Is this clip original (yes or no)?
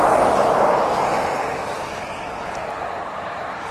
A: yes